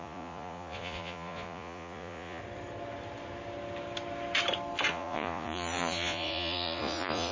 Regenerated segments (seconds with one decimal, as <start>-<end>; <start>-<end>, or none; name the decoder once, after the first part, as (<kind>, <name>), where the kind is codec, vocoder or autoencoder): 0.0-2.4 (vocoder, Vocos); 4.9-7.3

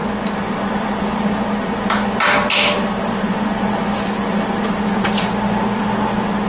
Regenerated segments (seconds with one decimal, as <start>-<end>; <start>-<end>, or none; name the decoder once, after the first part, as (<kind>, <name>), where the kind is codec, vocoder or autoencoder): none

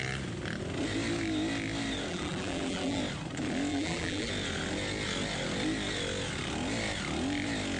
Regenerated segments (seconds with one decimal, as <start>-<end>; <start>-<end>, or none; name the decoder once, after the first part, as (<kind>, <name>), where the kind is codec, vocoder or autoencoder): 2.1-3.0 (vocoder, BigVGAN v2); 3.7-4.3

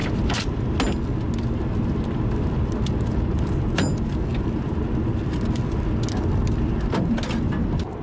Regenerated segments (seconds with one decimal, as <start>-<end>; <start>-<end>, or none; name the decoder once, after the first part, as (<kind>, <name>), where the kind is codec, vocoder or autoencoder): 0.0-0.6 (vocoder, BigVGAN v2)

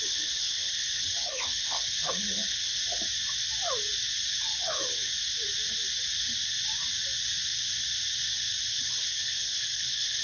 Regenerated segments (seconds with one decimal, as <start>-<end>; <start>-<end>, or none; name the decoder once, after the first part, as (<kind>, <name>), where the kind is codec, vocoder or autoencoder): 0.0-2.8 (codec, HILCodec); 4.4-5.1; 8.7-10.2